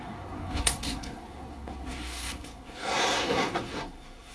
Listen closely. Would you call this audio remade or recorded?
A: remade